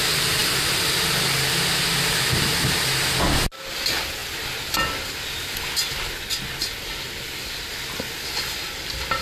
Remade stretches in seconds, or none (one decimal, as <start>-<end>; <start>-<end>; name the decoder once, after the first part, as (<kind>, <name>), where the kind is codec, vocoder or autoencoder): none